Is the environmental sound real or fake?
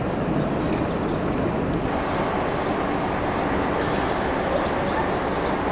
real